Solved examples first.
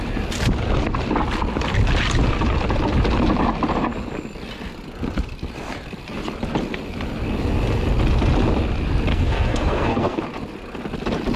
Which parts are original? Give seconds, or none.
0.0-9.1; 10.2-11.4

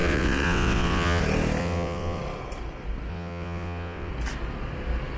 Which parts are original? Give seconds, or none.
1.2-1.6; 2.2-3.1; 4.1-5.2

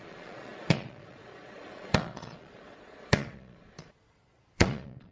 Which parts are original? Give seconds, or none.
none

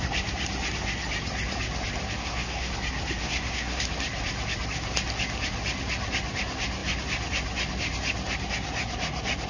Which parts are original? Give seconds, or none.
0.0-2.2; 2.7-3.2; 3.8-9.5